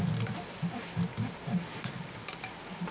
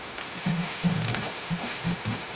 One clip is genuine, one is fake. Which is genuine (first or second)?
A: first